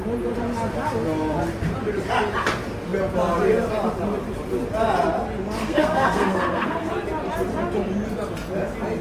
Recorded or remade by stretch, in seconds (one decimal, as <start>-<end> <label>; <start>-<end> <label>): 0.0-5.6 recorded; 5.6-6.9 remade; 6.9-9.0 recorded